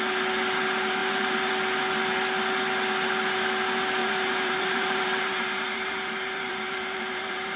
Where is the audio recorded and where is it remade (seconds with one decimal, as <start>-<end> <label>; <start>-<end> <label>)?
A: 0.0-1.0 recorded; 1.0-1.5 remade; 1.5-4.0 recorded; 4.0-7.6 remade